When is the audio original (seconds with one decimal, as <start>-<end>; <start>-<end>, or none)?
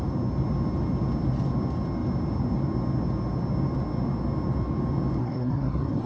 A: 0.0-5.2